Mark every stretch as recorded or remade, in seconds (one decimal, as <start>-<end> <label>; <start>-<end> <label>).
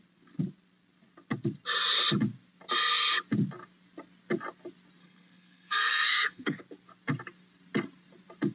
0.0-5.0 recorded; 5.0-6.6 remade; 6.6-8.5 recorded